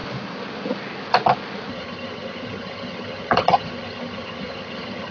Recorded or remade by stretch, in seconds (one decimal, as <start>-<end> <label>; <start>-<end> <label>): 0.0-1.7 recorded; 1.7-5.1 remade